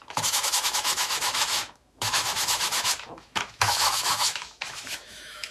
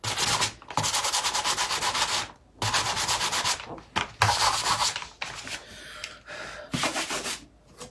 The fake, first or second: first